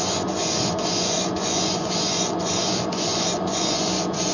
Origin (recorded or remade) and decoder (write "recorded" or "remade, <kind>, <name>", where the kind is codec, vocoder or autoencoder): remade, vocoder, Vocos